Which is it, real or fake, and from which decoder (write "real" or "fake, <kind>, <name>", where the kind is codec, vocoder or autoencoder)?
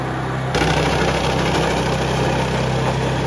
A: real